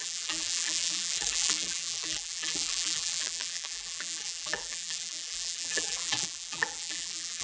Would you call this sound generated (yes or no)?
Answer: yes